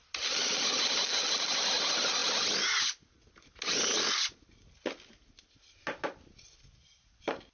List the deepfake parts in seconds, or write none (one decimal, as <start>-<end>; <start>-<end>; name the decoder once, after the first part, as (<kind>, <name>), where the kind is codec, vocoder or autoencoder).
none